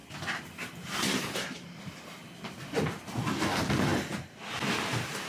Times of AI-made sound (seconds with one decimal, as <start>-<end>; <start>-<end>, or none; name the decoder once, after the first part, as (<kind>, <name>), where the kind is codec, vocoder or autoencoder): 0.0-1.9 (vocoder, BigVGAN v2)